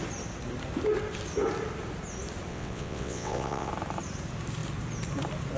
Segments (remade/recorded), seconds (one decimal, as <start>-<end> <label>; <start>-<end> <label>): 0.0-2.5 recorded; 2.5-3.7 remade; 3.7-5.6 recorded